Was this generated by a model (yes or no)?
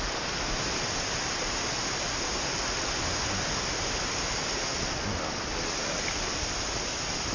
no